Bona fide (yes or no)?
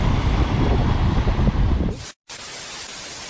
yes